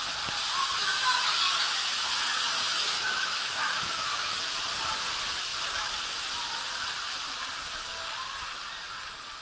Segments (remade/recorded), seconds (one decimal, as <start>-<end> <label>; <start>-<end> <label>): 0.0-0.8 recorded; 0.8-4.5 remade; 4.5-9.4 recorded